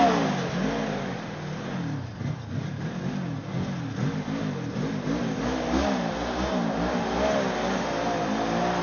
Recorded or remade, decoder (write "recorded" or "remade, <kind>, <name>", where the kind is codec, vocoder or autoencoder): recorded